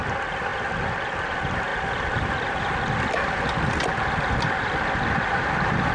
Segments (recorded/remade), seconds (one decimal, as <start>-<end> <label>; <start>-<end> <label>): 0.0-5.9 recorded